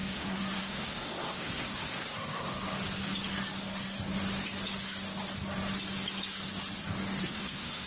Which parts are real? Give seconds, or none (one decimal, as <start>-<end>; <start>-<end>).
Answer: 2.5-7.2